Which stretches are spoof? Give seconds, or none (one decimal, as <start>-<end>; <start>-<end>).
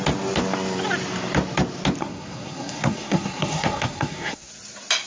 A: 2.0-4.5